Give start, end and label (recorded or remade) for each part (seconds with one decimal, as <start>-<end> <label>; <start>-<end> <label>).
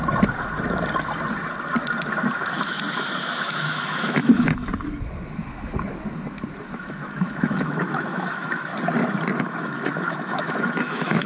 0.0-3.4 recorded; 3.4-4.7 remade; 4.7-6.6 recorded; 6.6-8.7 remade; 8.7-9.4 recorded; 9.4-11.3 remade